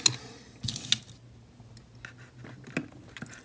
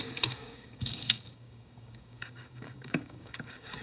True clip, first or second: first